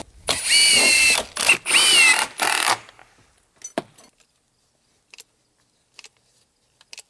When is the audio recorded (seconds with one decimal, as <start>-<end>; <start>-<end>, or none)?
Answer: 0.0-0.7; 2.1-7.1